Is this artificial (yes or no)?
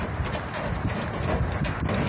no